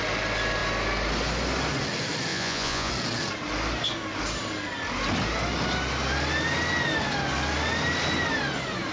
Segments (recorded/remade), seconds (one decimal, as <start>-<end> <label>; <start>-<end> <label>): 0.0-2.3 recorded; 2.3-2.9 remade; 2.9-8.9 recorded